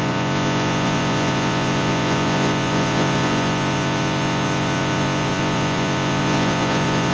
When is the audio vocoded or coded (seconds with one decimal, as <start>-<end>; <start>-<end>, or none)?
0.0-7.1